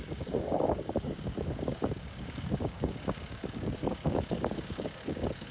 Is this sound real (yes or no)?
no